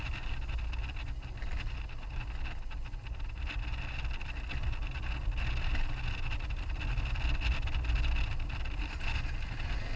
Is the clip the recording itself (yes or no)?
yes